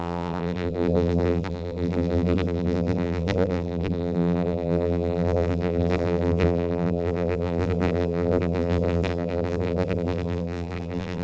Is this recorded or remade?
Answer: remade